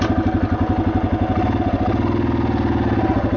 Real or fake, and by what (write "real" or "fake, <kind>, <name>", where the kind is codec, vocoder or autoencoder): real